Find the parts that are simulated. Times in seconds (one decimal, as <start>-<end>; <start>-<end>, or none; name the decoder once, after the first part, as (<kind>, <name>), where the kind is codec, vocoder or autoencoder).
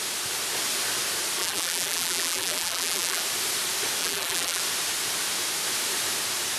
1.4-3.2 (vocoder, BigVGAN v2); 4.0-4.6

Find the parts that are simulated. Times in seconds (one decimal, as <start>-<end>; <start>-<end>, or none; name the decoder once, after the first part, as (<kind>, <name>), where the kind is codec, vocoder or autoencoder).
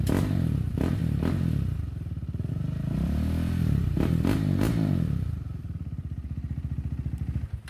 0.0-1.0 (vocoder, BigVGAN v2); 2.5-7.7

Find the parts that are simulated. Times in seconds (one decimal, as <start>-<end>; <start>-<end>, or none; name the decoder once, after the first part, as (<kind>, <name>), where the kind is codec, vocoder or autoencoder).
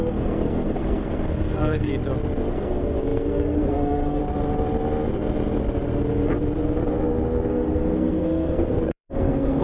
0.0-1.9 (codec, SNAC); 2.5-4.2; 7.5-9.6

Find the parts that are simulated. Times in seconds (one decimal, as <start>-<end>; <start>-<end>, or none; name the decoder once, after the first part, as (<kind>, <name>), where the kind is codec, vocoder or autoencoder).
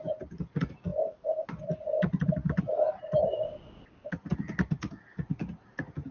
none